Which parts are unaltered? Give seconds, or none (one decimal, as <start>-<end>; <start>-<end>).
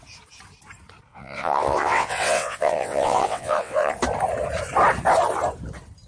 0.0-1.1; 3.9-6.1